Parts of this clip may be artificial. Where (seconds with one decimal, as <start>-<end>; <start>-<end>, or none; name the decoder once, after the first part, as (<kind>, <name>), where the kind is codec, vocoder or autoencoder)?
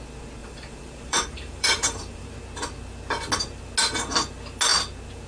0.4-2.3 (vocoder, BigVGAN v2)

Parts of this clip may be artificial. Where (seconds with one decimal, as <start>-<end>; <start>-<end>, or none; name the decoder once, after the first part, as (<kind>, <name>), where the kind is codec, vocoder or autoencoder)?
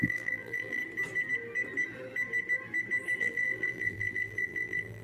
0.0-0.8 (vocoder, BigVGAN v2); 3.2-5.0